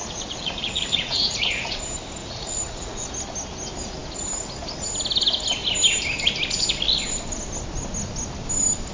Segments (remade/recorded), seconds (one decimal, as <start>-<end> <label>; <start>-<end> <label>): 0.0-1.8 remade; 1.8-2.2 recorded; 2.2-3.1 remade; 3.1-8.9 recorded